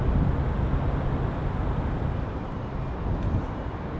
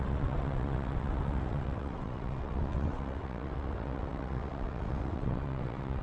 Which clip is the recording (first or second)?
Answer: first